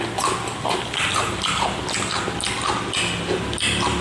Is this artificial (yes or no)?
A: no